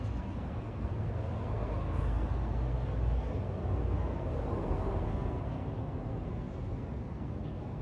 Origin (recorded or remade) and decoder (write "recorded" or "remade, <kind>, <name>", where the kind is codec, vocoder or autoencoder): remade, codec, SNAC